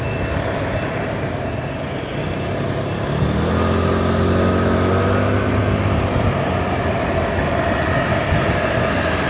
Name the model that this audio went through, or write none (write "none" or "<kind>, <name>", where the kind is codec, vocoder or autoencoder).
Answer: none